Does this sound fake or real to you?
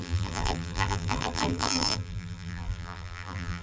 fake